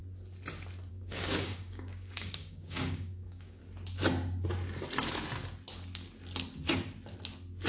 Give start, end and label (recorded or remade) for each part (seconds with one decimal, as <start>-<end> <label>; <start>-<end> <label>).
0.0-0.9 recorded; 0.9-3.6 remade; 3.6-7.7 recorded